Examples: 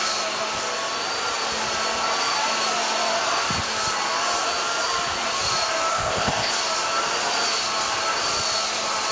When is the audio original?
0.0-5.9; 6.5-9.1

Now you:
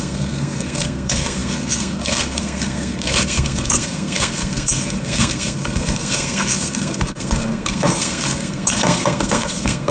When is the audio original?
none

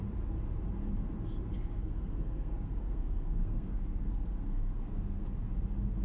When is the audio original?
0.0-1.7; 5.3-6.0

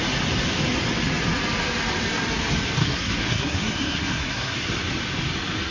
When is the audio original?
0.0-2.8; 4.7-5.7

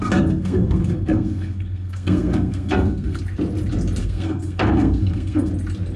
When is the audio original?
3.2-4.0; 5.5-6.0

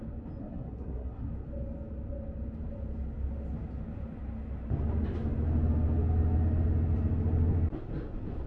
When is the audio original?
0.0-0.4; 1.3-8.5

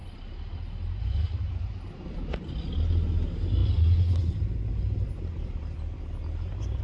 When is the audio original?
0.0-6.8

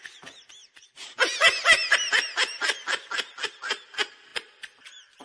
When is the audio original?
0.0-5.2